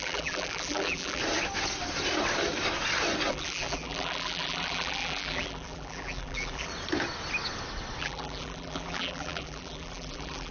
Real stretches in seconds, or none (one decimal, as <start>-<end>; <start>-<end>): 1.2-3.3; 6.7-8.0